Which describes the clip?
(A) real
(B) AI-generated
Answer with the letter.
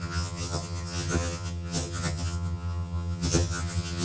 B